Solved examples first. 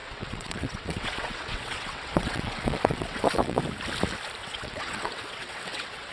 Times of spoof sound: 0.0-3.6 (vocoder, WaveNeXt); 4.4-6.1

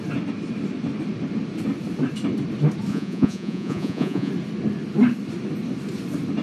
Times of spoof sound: 2.9-4.3 (vocoder, Vocos)

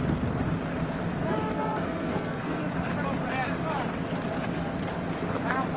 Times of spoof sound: 1.5-2.6 (codec, SNAC)

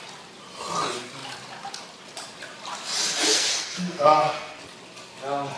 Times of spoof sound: 3.3-4.6 (codec, SNAC)

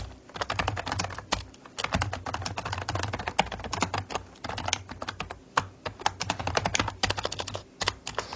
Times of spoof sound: 4.7-5.4 (vocoder, BigVGAN v2)

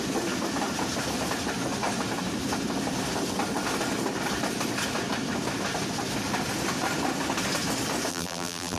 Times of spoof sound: 8.1-8.8 (vocoder, BigVGAN v2)

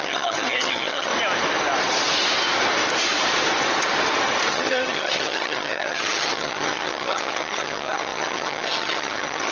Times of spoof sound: 0.0-1.1 (vocoder, HiFi-GAN); 4.5-9.5

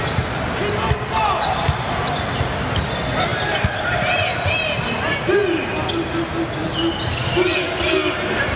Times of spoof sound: 3.3-4.5 (vocoder, BigVGAN v2)